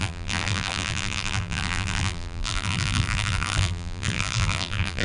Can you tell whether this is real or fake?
fake